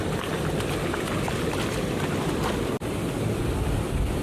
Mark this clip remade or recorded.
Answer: recorded